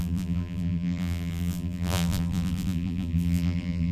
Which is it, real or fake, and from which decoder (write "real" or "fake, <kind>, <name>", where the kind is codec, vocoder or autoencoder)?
fake, vocoder, BigVGAN v2